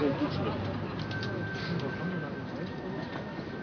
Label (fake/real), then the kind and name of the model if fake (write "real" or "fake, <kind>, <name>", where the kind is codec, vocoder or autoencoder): real